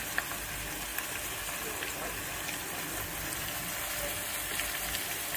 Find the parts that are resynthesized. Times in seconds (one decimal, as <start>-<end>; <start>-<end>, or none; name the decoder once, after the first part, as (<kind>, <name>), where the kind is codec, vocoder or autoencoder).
none